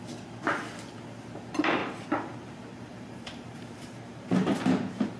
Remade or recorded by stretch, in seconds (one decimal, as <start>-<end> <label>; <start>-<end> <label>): 0.0-1.8 recorded; 1.8-5.2 remade

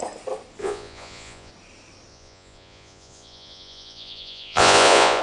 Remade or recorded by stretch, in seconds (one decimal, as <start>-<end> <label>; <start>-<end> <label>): 0.0-0.6 recorded; 0.6-1.5 remade; 1.5-2.1 recorded; 2.1-5.2 remade

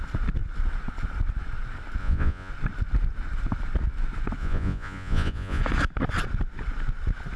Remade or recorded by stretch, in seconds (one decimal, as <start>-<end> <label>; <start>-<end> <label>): 0.0-2.0 recorded; 2.0-2.5 remade; 2.5-4.4 recorded; 4.4-5.6 remade; 5.6-7.4 recorded

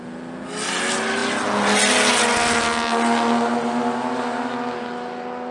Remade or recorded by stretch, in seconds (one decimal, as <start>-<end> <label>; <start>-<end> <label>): 0.0-5.5 recorded

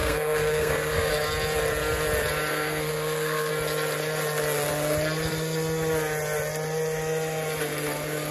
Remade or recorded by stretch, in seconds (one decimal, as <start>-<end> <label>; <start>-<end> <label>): 0.0-1.1 remade; 1.1-2.5 recorded; 2.5-3.5 remade; 3.5-8.3 recorded

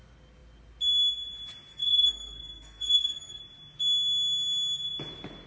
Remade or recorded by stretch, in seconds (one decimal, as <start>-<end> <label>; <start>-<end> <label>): 0.0-1.7 recorded; 1.7-3.4 remade; 3.4-5.5 recorded